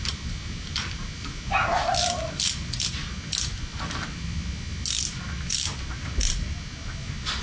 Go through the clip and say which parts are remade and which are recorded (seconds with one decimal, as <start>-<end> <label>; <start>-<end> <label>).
0.0-7.4 recorded